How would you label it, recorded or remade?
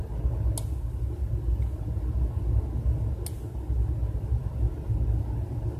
recorded